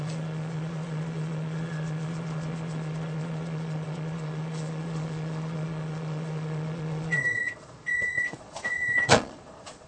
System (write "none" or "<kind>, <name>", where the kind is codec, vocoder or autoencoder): vocoder, Vocos